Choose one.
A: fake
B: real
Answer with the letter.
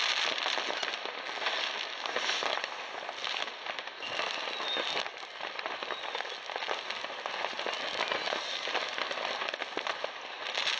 B